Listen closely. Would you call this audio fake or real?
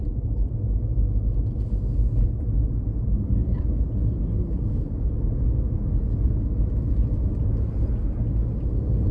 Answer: real